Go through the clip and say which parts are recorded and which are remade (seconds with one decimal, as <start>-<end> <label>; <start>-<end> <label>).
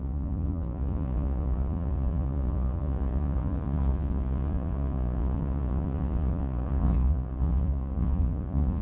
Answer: 0.0-8.8 remade